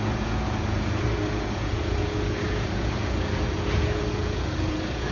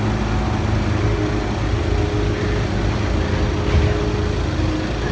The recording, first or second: second